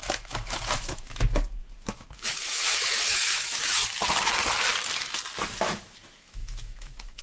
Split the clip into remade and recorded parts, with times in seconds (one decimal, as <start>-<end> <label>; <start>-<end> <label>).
0.0-3.8 remade; 3.8-5.6 recorded; 5.6-7.2 remade